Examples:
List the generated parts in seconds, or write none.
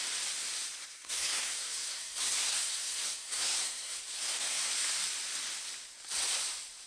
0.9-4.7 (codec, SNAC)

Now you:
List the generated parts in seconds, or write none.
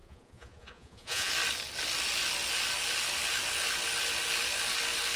0.0-1.3 (vocoder, Vocos)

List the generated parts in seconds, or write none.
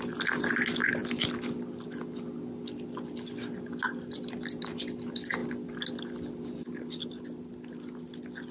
none